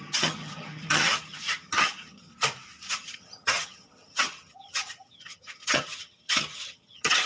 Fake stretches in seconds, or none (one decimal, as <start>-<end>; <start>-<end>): 0.0-2.3; 2.9-7.3

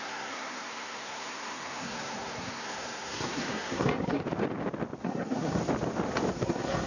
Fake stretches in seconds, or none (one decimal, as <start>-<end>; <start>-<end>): 0.0-4.2; 5.0-5.6; 6.3-6.9

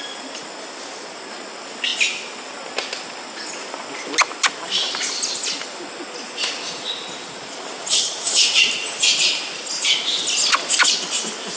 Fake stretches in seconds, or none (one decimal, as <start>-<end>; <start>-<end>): none